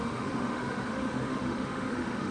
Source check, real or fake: fake